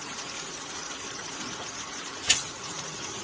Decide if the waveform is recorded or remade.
remade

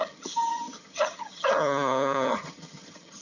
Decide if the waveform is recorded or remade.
remade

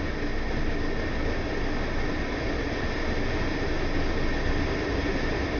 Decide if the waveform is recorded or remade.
recorded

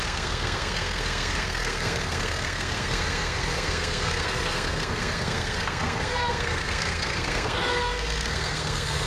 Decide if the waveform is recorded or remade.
remade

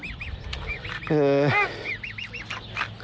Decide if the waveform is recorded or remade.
recorded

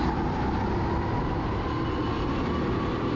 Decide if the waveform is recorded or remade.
recorded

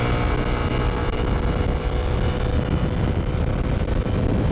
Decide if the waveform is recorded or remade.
recorded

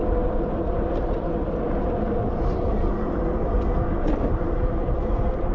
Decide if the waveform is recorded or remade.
recorded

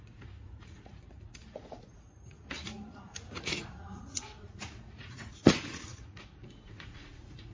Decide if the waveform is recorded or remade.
remade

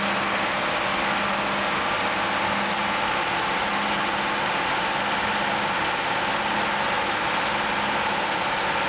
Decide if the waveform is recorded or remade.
recorded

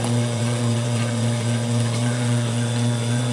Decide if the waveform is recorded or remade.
remade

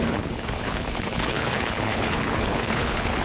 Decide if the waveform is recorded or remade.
remade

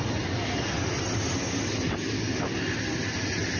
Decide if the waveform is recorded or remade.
recorded